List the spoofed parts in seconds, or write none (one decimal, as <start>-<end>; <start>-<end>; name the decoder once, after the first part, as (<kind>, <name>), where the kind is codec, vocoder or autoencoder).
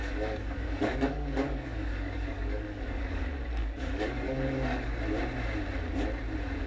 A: 0.0-3.2 (codec, DAC); 3.6-5.0